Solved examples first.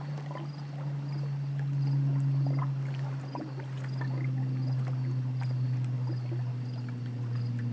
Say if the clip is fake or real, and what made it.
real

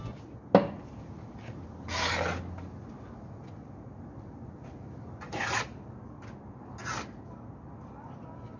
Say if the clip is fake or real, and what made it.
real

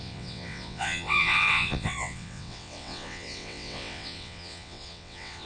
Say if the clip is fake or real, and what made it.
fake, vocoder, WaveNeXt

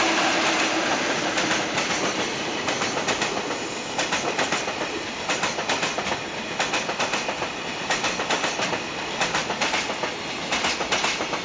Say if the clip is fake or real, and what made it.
real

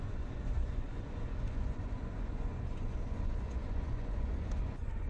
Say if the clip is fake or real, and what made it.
fake, vocoder, Vocos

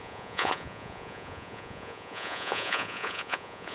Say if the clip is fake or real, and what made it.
fake, vocoder, Vocos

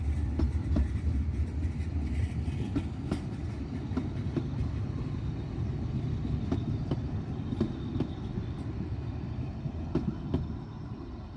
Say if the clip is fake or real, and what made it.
real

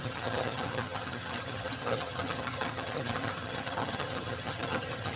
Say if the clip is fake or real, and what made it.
fake, vocoder, HiFi-GAN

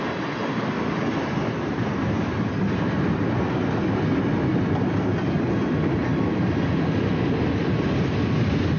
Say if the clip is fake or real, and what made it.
real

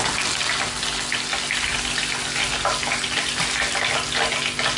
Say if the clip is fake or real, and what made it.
real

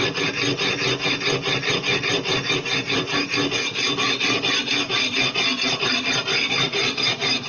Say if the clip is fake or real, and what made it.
real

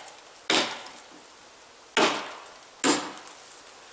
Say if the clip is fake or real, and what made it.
real